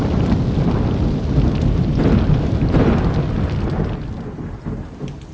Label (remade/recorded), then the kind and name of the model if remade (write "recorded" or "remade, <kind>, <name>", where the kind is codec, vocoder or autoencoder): recorded